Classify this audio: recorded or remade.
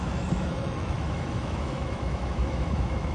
remade